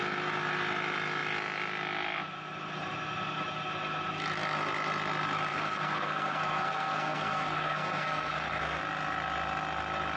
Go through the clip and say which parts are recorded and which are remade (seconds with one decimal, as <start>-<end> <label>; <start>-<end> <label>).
0.0-5.5 recorded; 5.5-8.8 remade; 8.8-10.2 recorded